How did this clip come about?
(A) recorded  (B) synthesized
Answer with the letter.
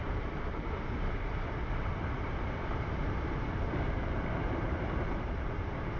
B